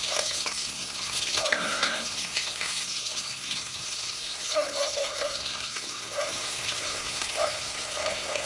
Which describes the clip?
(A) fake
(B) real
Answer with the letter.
A